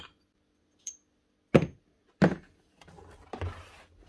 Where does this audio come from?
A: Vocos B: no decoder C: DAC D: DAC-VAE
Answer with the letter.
B